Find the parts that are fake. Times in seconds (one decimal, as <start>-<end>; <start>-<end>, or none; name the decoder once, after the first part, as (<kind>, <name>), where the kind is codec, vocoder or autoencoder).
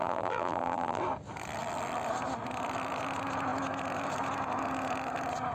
0.0-1.0 (vocoder, BigVGAN v2)